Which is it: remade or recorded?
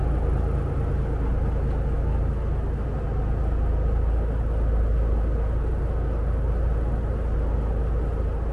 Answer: recorded